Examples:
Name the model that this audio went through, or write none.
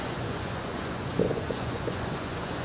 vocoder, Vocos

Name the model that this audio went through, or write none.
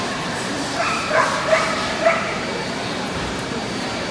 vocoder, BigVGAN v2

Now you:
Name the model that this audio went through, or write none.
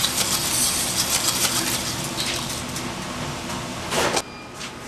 none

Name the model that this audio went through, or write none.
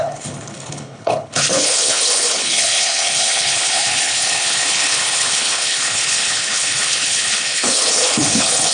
codec, HILCodec